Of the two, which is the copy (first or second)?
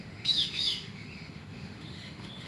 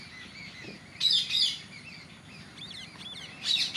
first